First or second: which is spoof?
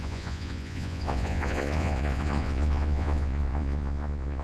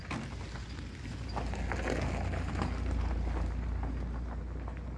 first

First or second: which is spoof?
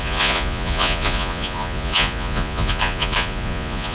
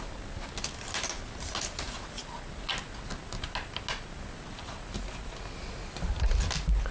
first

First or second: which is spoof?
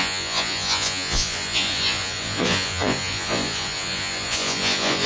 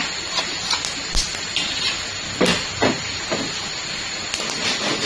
first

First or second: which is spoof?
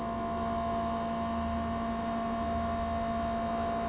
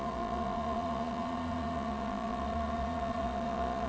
second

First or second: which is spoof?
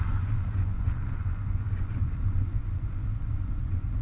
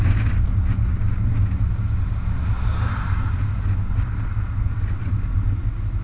first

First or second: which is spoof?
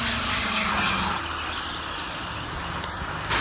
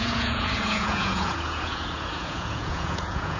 second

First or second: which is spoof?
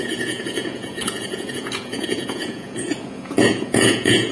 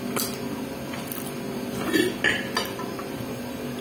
first